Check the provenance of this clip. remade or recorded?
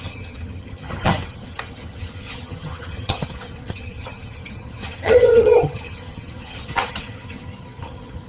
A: remade